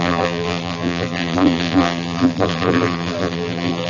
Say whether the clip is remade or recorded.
remade